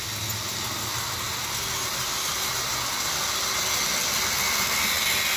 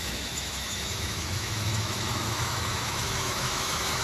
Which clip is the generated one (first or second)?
second